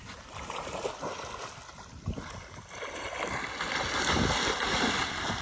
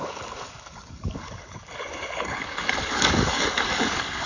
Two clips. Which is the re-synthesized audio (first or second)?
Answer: second